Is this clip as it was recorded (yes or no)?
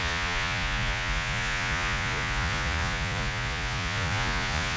no